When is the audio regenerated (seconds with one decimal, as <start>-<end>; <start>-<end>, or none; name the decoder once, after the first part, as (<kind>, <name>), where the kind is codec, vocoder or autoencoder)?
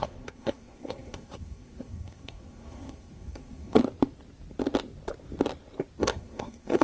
0.0-3.8 (codec, SNAC); 6.0-6.8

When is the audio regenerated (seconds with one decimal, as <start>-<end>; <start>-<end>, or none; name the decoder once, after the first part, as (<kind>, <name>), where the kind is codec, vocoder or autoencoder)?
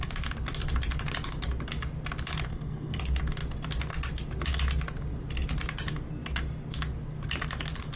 2.5-3.0 (codec, SNAC)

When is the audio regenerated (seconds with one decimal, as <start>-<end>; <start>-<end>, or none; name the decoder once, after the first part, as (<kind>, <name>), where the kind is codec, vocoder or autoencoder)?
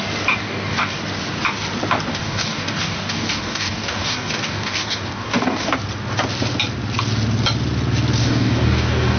0.4-1.0 (codec, DAC); 2.1-5.7; 8.2-9.2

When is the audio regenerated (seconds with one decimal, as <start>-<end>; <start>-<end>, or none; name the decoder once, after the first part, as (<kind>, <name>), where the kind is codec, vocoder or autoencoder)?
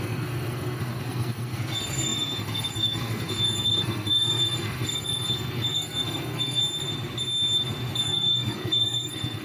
0.0-6.6 (codec, SNAC); 8.0-9.4